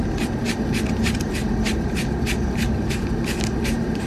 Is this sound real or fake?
real